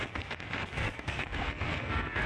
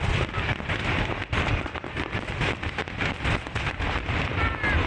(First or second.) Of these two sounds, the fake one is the first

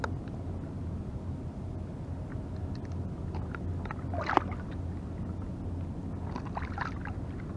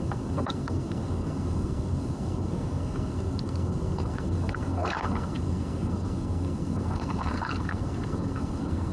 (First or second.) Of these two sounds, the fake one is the second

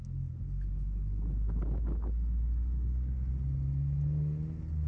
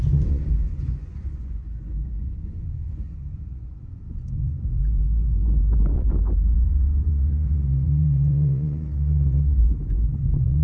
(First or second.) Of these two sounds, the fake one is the second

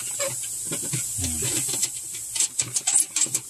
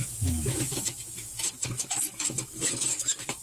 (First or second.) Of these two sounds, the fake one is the second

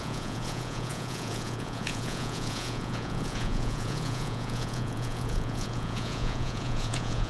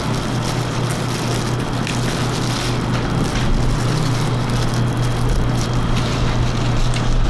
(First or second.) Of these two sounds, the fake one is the first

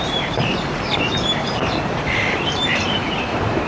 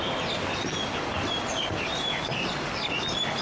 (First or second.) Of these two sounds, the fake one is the first